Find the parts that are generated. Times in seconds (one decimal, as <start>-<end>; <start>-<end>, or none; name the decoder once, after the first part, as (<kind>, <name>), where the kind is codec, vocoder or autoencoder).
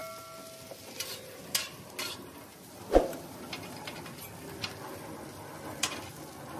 none